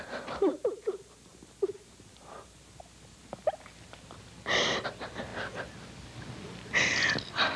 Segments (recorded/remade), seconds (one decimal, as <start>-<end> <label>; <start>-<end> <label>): 0.0-7.6 recorded